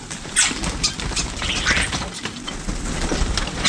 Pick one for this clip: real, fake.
real